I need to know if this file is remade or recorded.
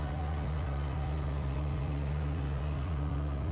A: remade